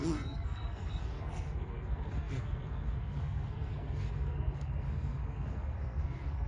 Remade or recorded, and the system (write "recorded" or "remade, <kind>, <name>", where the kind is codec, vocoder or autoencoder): remade, codec, SNAC